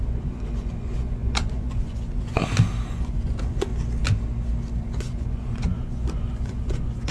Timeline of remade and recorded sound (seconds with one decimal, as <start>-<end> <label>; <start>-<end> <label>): 0.0-2.4 remade; 2.4-2.9 recorded; 2.9-3.7 remade; 3.7-4.8 recorded; 4.8-7.1 remade